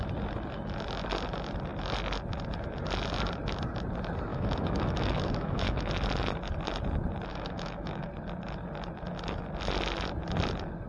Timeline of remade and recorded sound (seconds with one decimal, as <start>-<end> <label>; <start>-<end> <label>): 0.0-4.3 recorded; 4.3-5.9 remade; 5.9-7.3 recorded; 7.3-8.1 remade; 8.1-10.9 recorded